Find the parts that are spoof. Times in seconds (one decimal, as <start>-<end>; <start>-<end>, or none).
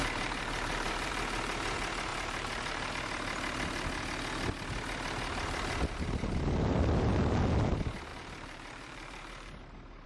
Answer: 0.0-1.1; 2.1-2.9; 8.1-9.6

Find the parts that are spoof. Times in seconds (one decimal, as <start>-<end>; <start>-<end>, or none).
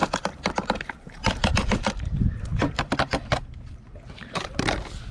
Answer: 0.0-5.1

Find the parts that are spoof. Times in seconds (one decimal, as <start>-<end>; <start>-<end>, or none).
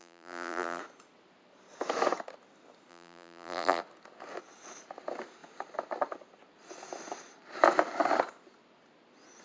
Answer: 0.0-0.8; 2.9-3.8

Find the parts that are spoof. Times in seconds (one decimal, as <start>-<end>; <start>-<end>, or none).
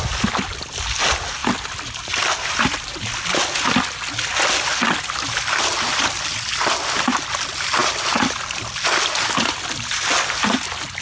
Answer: none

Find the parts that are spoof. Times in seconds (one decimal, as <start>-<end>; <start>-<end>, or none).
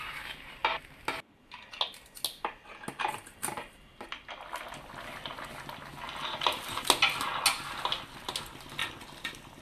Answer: none